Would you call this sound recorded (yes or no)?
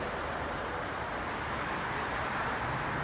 yes